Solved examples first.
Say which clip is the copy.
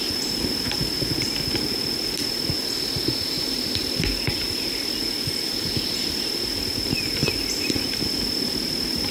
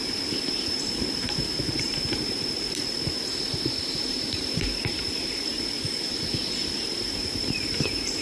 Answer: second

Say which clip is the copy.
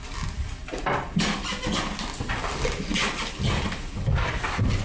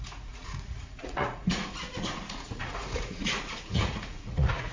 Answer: second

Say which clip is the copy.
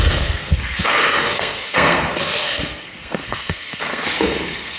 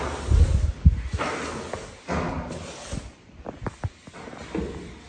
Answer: first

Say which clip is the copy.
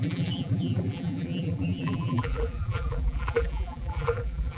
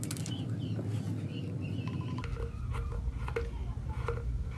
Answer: first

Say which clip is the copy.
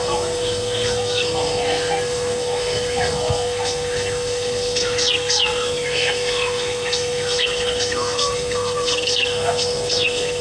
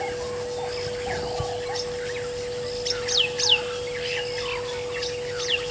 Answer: first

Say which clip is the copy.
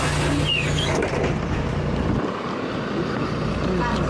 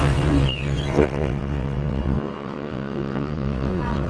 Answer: second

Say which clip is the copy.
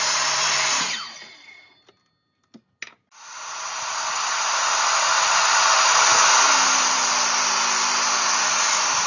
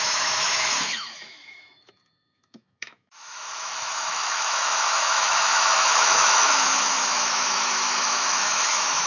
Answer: second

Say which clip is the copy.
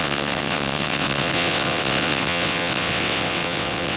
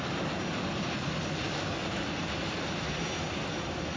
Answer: first